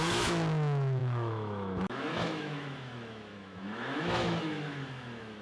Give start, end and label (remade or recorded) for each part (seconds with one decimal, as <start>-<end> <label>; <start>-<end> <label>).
0.0-5.4 remade